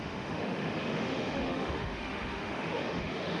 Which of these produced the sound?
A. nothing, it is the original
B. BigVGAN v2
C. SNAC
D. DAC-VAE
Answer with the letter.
D